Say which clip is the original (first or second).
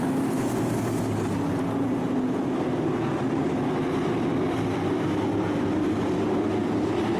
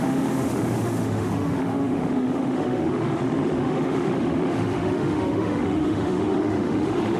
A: first